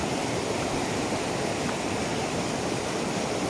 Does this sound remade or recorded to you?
recorded